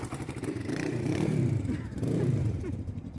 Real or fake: fake